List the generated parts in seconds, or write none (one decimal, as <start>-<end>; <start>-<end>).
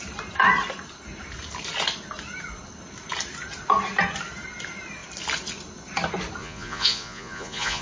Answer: 6.4-7.8